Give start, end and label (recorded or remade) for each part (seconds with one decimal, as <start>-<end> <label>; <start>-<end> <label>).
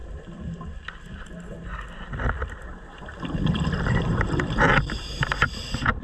0.0-3.0 recorded; 3.0-6.0 remade